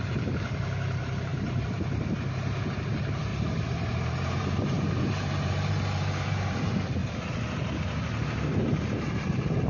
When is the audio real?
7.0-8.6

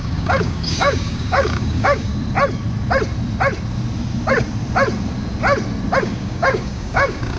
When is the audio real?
2.1-6.0

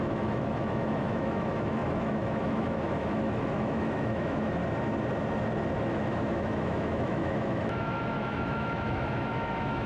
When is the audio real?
4.6-5.9

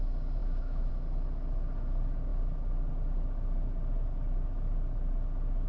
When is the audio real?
0.0-0.4; 0.9-5.7